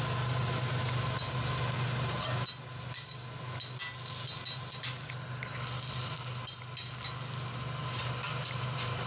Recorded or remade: recorded